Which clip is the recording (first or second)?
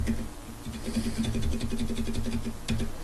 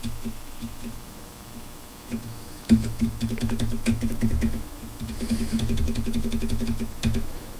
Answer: first